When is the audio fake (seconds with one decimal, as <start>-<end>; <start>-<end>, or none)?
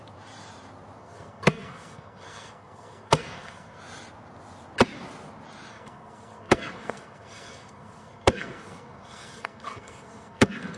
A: 1.0-3.8; 5.7-10.8